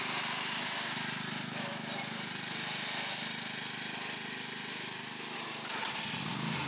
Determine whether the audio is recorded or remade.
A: recorded